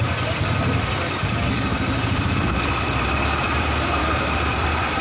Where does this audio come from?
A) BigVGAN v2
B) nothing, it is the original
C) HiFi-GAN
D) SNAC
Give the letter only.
A